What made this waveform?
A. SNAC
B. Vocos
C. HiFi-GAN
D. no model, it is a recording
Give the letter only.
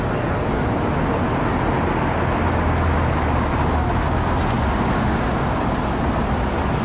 D